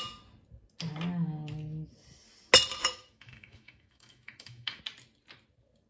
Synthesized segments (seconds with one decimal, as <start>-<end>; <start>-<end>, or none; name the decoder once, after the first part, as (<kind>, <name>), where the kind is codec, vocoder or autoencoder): 2.8-4.8 (autoencoder, DAC-VAE)